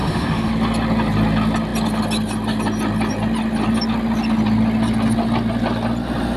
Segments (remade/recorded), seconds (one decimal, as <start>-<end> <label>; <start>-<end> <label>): 0.0-0.5 remade; 0.5-6.4 recorded

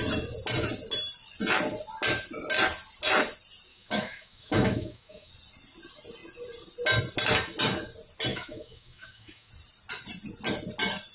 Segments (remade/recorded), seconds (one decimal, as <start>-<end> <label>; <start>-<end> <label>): 0.0-3.7 recorded; 3.7-5.3 remade; 5.3-8.3 recorded; 8.3-9.5 remade; 9.5-11.1 recorded

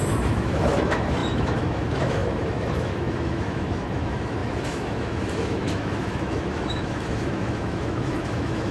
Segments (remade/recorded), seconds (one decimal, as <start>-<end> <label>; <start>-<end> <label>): 0.0-8.7 remade

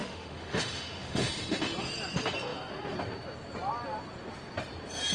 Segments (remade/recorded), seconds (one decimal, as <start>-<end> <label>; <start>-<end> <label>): 0.0-1.3 remade; 1.3-5.1 recorded

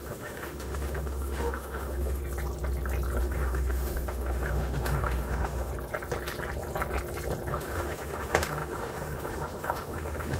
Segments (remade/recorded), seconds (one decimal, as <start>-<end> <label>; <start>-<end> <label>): 0.0-2.2 remade; 2.2-3.2 recorded; 3.2-5.7 remade; 5.7-7.5 recorded; 7.5-10.4 remade

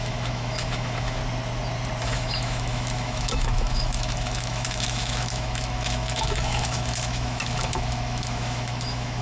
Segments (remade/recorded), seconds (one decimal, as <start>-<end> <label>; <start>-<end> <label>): 0.0-1.2 remade; 1.2-2.0 recorded; 2.0-9.2 remade

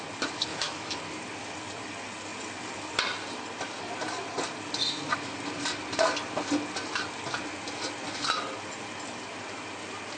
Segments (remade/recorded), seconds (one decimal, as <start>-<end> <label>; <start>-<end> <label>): 0.0-0.5 recorded; 0.5-1.0 remade; 1.0-10.2 recorded

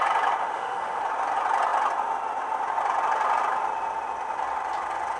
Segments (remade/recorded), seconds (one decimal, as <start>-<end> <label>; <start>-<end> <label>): 0.0-0.4 recorded; 0.4-1.0 remade; 1.0-5.2 recorded